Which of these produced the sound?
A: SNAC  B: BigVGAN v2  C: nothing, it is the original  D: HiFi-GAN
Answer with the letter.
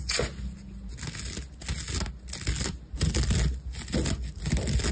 C